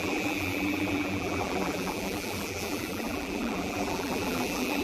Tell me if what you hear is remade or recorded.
remade